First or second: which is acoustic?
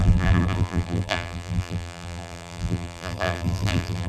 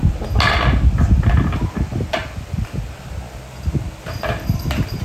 second